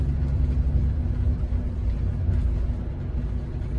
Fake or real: real